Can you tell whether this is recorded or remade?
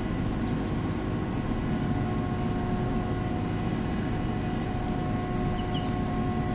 recorded